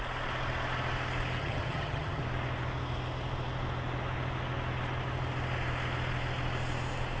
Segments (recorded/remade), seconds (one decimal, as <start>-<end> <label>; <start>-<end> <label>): 0.0-1.4 recorded; 1.4-2.2 remade; 2.2-7.2 recorded